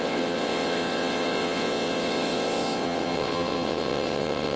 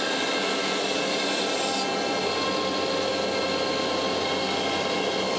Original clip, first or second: second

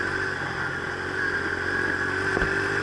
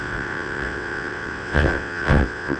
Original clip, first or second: first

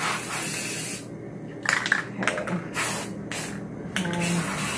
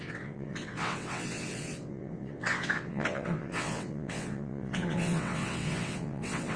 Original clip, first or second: first